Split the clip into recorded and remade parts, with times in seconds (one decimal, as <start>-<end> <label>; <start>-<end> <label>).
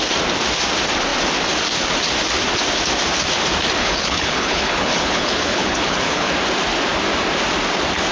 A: 0.0-3.8 recorded; 3.8-6.3 remade; 6.3-8.1 recorded